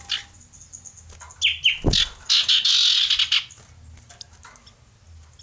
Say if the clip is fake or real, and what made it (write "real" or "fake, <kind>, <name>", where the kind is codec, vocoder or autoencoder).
real